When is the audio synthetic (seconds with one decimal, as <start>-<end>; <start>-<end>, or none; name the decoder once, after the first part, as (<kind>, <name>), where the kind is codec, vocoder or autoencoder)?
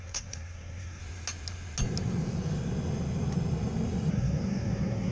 0.0-1.0 (codec, SNAC); 4.1-5.1